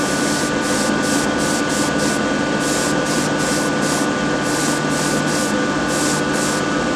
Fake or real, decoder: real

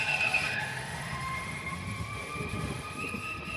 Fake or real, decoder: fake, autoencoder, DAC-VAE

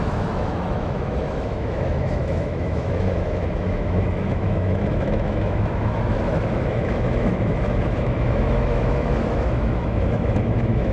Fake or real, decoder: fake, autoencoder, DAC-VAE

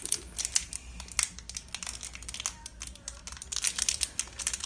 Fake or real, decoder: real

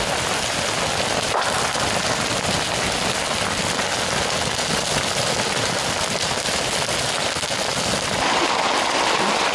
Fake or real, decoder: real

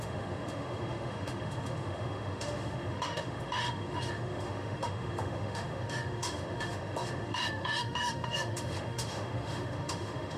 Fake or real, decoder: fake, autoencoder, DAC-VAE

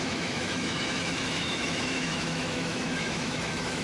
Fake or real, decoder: fake, autoencoder, DAC-VAE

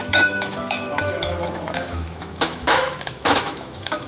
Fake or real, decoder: fake, autoencoder, DAC-VAE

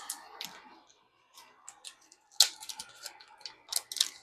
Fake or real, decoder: real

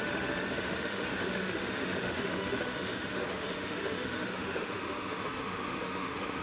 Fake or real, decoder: fake, autoencoder, DAC-VAE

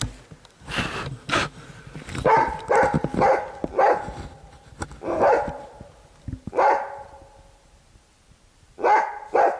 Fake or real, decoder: real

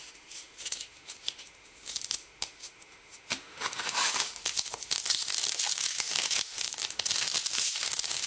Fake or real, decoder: fake, autoencoder, DAC-VAE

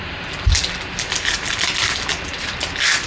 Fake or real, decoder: real